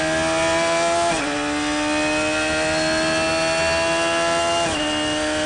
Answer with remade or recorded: recorded